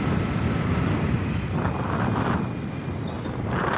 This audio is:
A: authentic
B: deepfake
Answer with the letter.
A